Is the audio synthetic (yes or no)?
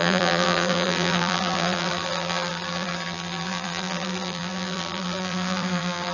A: yes